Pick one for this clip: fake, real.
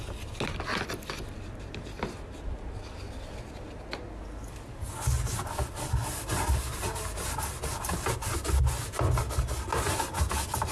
real